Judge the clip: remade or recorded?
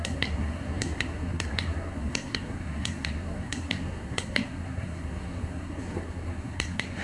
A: remade